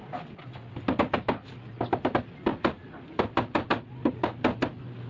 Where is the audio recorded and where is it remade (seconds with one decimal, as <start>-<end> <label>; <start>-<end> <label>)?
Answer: 0.0-2.5 recorded; 2.5-3.9 remade; 3.9-5.1 recorded